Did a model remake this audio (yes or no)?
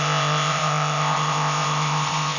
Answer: yes